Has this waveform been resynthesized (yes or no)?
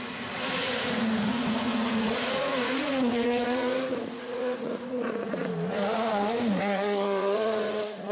yes